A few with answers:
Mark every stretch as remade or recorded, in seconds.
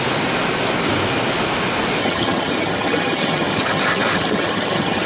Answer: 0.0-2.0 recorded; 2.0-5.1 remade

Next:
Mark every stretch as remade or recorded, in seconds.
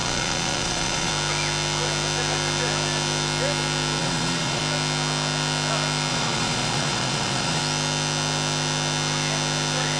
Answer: 0.0-1.1 remade; 1.1-4.0 recorded; 4.0-4.6 remade; 4.6-6.1 recorded; 6.1-7.6 remade; 7.6-10.0 recorded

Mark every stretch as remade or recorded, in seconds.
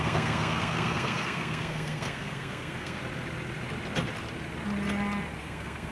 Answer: 0.0-3.0 remade; 3.0-5.4 recorded; 5.4-5.9 remade